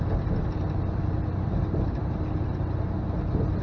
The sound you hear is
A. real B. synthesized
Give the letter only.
A